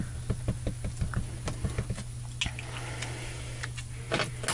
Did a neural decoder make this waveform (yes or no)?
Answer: no